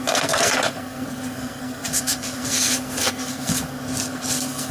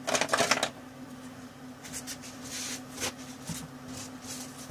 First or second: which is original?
second